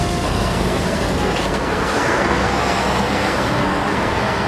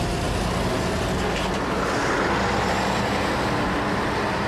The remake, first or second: first